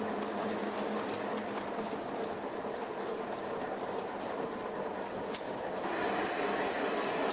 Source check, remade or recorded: recorded